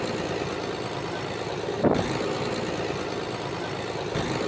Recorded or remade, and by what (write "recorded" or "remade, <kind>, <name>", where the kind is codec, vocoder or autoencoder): recorded